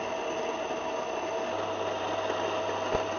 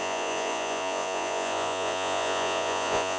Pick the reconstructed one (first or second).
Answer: second